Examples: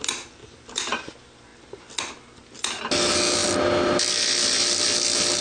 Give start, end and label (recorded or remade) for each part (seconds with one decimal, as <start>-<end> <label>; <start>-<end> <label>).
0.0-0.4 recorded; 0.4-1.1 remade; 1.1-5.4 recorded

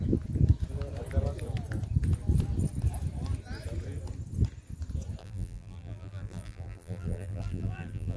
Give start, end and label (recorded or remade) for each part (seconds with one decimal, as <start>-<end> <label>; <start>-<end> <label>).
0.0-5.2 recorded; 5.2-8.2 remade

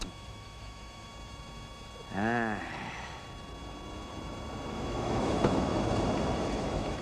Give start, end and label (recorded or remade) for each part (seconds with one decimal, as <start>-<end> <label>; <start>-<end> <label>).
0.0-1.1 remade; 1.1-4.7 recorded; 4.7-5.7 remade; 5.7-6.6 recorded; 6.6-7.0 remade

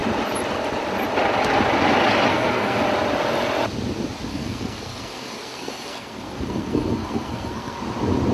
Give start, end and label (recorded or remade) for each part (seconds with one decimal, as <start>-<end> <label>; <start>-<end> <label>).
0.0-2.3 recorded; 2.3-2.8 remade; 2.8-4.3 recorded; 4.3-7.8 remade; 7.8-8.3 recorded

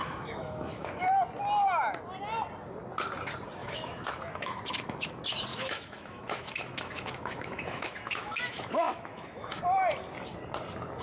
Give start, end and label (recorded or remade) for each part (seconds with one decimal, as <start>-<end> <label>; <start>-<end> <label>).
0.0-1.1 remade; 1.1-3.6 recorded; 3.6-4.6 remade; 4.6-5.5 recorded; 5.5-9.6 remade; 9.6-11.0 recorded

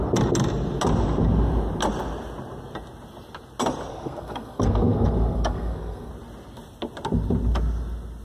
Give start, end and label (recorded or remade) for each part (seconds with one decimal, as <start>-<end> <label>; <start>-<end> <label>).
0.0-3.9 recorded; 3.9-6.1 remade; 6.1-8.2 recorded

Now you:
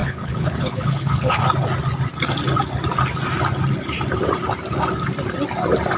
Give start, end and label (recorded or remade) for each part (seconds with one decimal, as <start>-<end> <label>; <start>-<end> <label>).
0.0-1.4 remade; 1.4-6.0 recorded

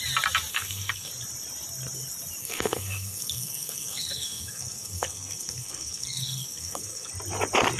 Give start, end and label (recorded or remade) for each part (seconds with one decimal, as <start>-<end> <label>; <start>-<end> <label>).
0.0-0.5 recorded; 0.5-1.1 remade; 1.1-2.4 recorded; 2.4-7.1 remade; 7.1-7.8 recorded